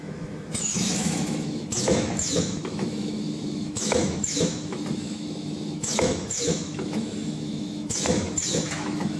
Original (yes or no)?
no